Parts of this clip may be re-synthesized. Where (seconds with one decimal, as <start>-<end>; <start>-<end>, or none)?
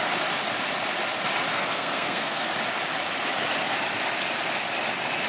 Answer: 1.5-2.5